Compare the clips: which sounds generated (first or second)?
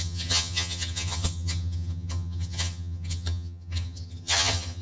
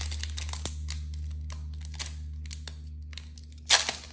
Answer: first